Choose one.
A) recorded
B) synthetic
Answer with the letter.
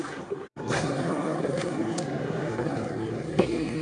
B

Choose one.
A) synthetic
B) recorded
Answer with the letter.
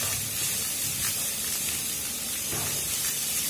A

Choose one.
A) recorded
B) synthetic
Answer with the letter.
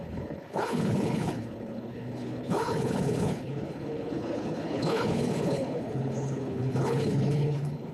B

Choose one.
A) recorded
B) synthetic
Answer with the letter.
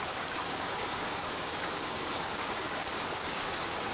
B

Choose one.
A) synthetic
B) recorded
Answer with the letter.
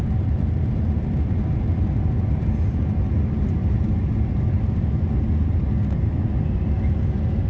B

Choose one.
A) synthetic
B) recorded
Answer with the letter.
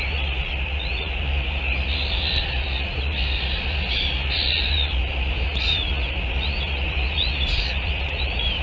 A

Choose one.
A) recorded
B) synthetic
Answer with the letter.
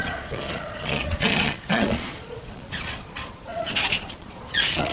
B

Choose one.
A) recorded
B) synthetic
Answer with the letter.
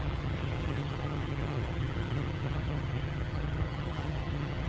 B